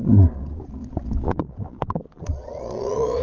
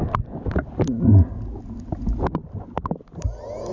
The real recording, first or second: second